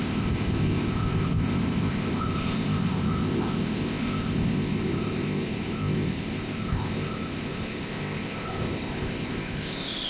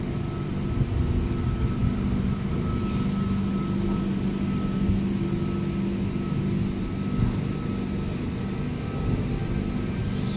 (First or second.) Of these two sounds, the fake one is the first